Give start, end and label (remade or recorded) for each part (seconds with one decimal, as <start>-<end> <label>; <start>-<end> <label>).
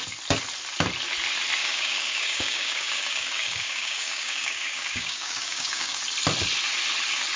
0.0-1.6 recorded; 1.6-6.0 remade; 6.0-7.4 recorded